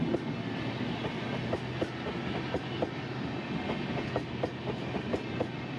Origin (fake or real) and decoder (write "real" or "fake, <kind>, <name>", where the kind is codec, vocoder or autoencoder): real